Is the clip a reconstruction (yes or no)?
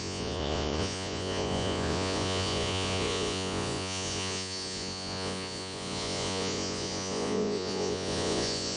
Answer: yes